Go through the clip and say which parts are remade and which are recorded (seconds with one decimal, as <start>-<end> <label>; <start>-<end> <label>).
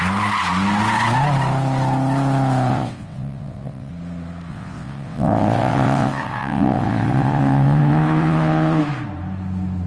0.0-2.7 recorded; 2.7-3.9 remade; 3.9-4.5 recorded; 4.5-8.8 remade; 8.8-9.9 recorded